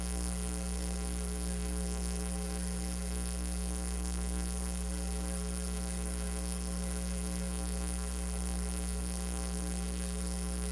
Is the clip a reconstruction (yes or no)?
yes